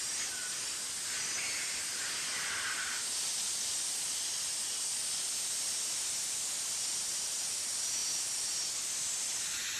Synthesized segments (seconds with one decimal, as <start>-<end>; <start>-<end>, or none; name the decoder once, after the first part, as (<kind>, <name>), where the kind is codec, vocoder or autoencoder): none